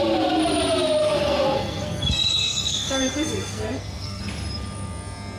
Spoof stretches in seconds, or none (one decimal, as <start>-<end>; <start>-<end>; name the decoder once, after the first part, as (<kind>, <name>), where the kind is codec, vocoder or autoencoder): 1.0-4.2 (codec, SNAC)